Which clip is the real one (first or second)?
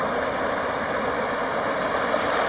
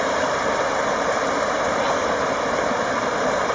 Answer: first